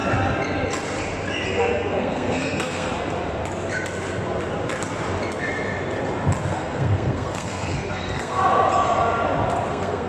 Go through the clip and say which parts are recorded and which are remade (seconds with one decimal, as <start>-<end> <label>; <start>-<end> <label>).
0.0-1.6 recorded; 1.6-2.9 remade; 2.9-6.5 recorded; 6.5-8.4 remade; 8.4-9.7 recorded; 9.7-10.1 remade

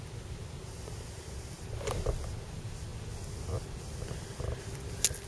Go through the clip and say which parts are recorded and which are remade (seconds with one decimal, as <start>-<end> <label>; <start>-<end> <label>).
0.0-5.3 recorded

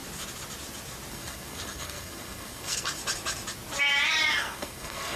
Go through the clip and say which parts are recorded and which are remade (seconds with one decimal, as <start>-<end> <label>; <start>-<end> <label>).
0.0-1.1 recorded; 1.1-3.0 remade; 3.0-4.4 recorded; 4.4-5.2 remade

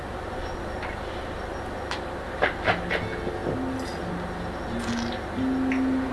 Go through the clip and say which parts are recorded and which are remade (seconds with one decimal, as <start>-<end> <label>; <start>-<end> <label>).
0.0-6.1 recorded

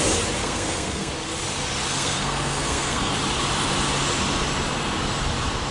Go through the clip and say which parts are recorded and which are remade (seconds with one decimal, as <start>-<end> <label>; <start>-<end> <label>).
0.0-0.4 recorded; 0.4-1.1 remade; 1.1-1.9 recorded; 1.9-3.1 remade; 3.1-5.7 recorded